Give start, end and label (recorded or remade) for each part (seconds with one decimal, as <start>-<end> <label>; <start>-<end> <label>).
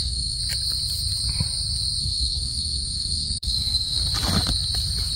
0.0-0.4 remade; 0.4-2.0 recorded; 2.0-4.0 remade; 4.0-5.2 recorded